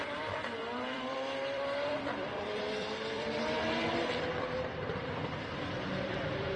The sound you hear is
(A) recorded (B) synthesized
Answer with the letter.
B